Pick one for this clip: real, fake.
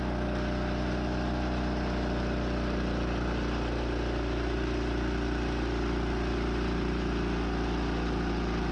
real